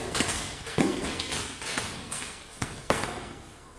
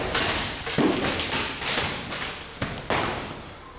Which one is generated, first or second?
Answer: first